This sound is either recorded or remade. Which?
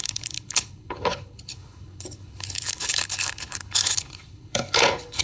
remade